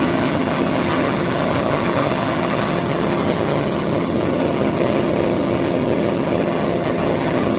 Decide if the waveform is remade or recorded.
remade